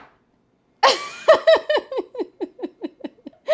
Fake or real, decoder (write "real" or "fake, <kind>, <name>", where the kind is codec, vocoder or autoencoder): real